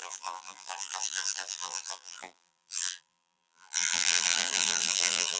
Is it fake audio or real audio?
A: fake